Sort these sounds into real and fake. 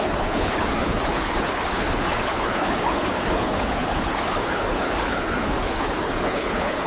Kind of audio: fake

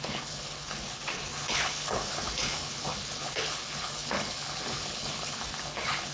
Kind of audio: fake